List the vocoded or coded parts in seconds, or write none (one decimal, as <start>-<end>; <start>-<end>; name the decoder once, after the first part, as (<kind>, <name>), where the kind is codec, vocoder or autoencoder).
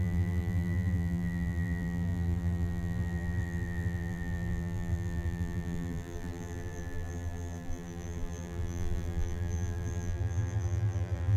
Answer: 0.0-11.4 (vocoder, BigVGAN v2)